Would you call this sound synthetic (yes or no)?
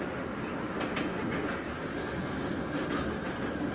no